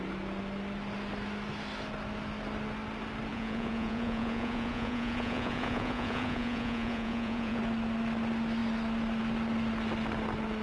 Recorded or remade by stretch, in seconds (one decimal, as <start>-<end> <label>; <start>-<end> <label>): 0.0-3.3 recorded; 3.3-7.6 remade; 7.6-10.6 recorded